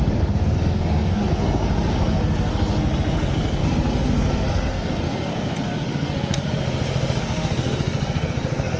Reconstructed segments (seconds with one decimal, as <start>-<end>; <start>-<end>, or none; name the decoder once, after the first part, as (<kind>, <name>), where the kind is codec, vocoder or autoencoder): 0.0-6.5 (codec, SNAC); 7.2-8.8